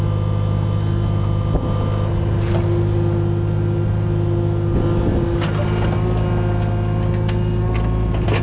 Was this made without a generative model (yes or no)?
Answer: yes